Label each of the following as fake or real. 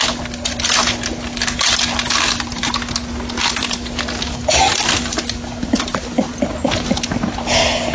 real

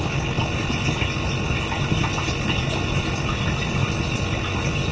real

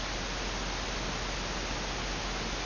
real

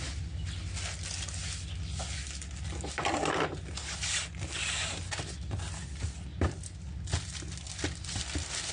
real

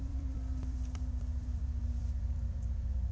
fake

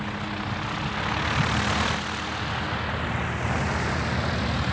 real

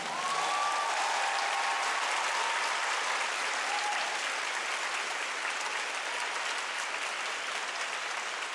real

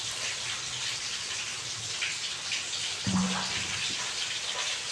real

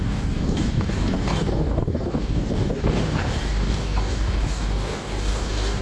fake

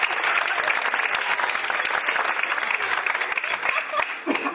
real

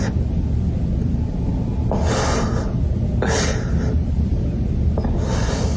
real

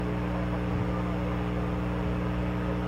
real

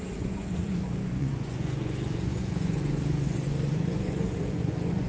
fake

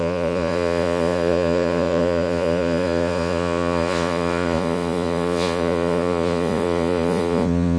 fake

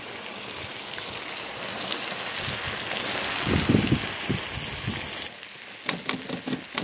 real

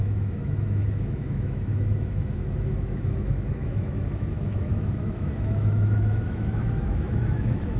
fake